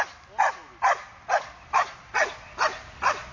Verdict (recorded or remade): recorded